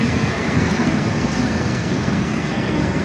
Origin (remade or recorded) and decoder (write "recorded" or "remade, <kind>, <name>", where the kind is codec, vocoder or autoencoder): remade, codec, SNAC